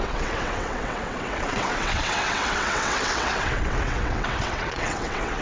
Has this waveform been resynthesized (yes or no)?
yes